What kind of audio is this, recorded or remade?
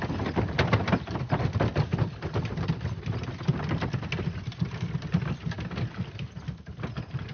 recorded